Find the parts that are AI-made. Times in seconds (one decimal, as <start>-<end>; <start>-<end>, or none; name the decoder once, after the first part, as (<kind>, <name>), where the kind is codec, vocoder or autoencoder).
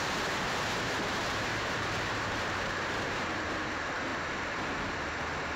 0.0-4.1 (vocoder, BigVGAN v2)